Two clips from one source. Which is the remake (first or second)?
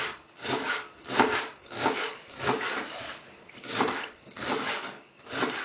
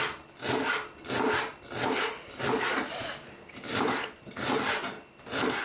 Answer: first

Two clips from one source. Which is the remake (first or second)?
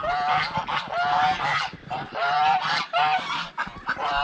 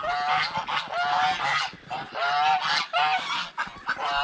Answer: first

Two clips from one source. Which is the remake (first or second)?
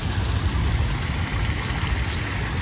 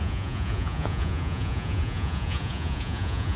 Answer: second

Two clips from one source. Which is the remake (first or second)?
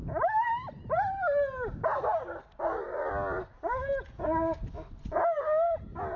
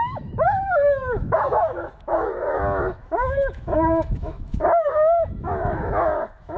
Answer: second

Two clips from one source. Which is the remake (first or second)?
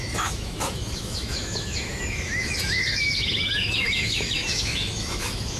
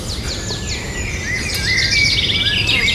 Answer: first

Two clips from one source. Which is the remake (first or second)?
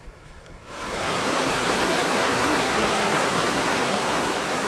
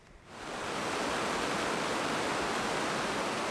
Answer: first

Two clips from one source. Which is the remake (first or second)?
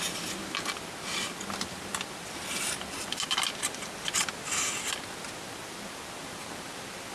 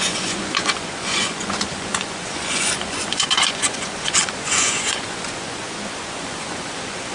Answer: second